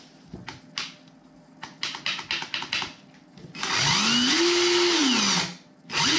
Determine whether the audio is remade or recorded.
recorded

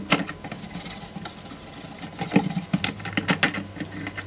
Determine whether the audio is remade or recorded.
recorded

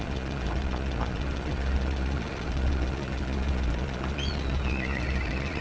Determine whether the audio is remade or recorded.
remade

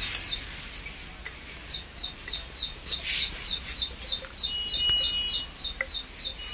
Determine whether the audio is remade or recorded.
recorded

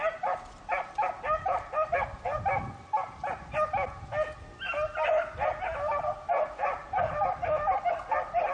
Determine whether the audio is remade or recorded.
recorded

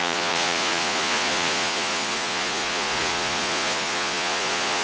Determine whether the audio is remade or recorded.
remade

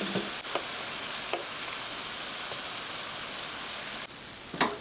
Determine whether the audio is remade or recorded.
recorded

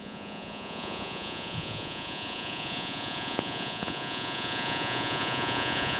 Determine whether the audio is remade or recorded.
remade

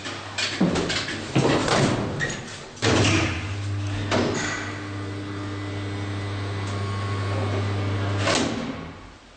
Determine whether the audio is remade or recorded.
recorded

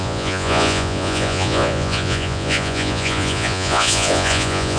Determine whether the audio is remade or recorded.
remade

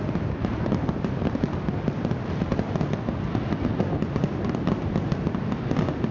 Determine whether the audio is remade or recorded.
recorded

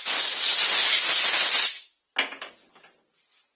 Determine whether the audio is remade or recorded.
recorded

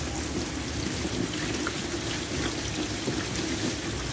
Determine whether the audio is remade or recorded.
recorded